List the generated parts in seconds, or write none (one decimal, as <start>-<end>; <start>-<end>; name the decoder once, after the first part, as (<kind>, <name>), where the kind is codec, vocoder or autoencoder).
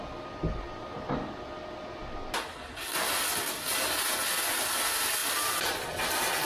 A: none